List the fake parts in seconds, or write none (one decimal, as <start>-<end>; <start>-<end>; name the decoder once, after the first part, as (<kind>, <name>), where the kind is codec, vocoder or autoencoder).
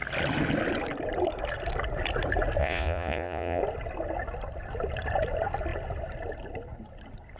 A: 2.6-3.6 (vocoder, Vocos)